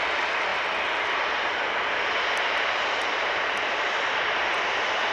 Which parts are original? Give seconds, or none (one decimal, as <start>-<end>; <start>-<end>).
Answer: 0.0-5.1